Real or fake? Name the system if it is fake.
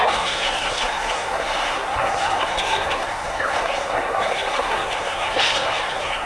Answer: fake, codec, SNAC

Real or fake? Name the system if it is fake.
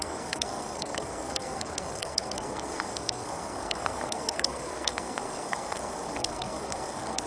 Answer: fake, codec, SNAC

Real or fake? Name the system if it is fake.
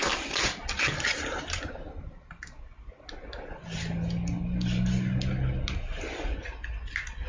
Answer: real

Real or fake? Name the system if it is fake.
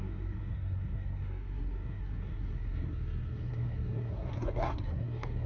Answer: fake, codec, SNAC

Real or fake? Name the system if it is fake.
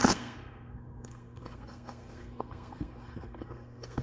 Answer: fake, codec, SNAC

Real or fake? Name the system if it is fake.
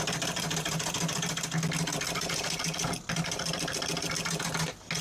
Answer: real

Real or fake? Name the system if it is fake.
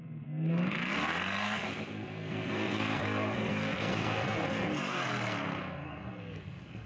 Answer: fake, codec, SNAC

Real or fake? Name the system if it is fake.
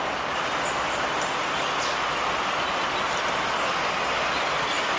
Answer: real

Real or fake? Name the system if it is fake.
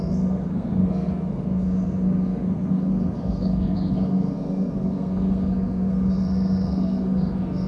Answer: fake, codec, SNAC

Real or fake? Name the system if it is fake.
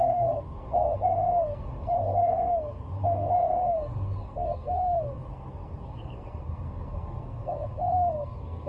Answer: fake, codec, SNAC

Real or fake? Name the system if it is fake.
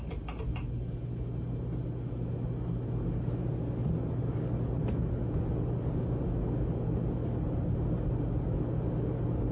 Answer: real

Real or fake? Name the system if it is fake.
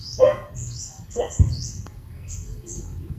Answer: fake, codec, SNAC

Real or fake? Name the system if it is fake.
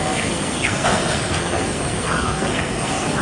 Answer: fake, codec, SNAC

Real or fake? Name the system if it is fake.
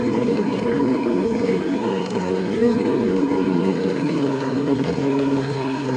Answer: fake, codec, SNAC